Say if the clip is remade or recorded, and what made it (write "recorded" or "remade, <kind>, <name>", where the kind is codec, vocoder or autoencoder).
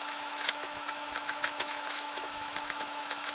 remade, autoencoder, DAC-VAE